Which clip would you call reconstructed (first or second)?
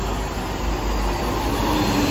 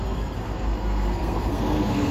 second